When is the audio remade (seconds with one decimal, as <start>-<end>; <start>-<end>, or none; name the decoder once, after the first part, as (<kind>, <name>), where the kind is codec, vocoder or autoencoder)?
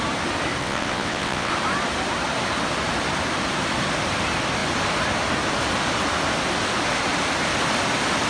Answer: 0.6-1.5 (vocoder, WaveNeXt)